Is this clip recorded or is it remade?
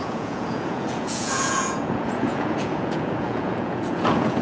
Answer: remade